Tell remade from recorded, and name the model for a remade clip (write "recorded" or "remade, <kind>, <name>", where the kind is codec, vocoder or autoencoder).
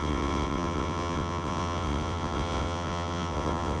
remade, vocoder, WaveNeXt